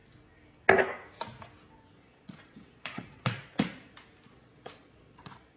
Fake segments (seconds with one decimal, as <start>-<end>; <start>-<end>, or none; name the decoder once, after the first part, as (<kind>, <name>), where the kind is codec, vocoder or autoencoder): 1.9-3.5 (vocoder, Vocos); 4.3-5.6